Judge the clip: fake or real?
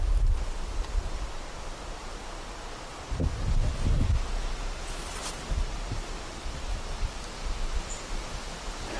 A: fake